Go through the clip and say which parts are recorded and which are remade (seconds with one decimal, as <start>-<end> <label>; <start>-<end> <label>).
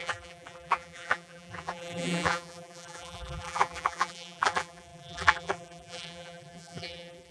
0.0-7.3 remade